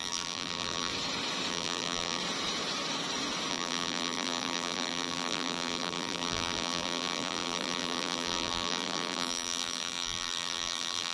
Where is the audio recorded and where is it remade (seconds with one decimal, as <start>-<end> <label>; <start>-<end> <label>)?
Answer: 0.0-0.9 remade; 0.9-1.5 recorded; 1.5-2.2 remade; 2.2-3.5 recorded; 3.5-11.1 remade